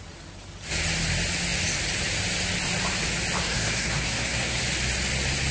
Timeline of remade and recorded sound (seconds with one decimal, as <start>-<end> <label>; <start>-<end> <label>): 0.0-3.4 recorded; 3.4-4.6 remade; 4.6-5.5 recorded